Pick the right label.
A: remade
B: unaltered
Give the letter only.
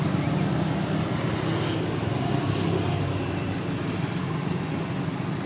B